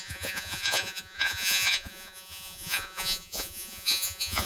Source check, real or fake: fake